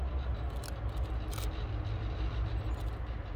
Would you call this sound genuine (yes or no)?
yes